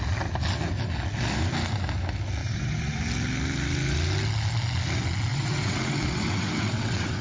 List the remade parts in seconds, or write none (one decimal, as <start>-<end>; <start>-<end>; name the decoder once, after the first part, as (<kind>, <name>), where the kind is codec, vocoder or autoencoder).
2.4-3.0 (vocoder, WaveNeXt); 5.3-7.2